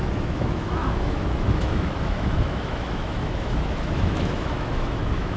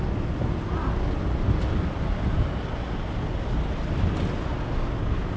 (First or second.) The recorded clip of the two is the second